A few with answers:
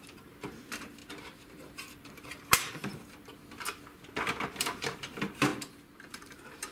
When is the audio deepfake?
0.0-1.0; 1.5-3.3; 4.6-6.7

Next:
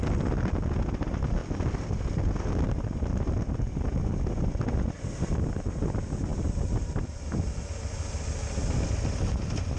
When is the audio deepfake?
none

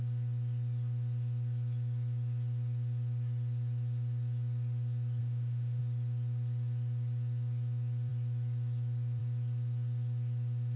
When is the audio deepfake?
5.2-5.8